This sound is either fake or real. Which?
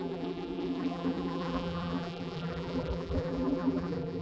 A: fake